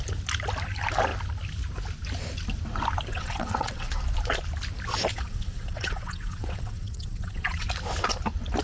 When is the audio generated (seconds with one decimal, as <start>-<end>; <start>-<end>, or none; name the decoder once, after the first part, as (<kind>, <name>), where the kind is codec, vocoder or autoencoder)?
3.1-4.0 (vocoder, WaveNeXt); 5.1-7.7